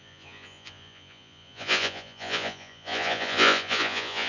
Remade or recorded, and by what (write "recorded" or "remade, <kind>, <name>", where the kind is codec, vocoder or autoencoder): remade, vocoder, Vocos